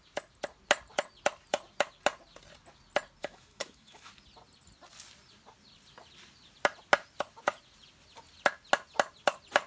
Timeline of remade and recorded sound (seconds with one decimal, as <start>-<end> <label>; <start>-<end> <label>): 0.0-3.2 recorded; 3.2-4.1 remade; 4.1-9.7 recorded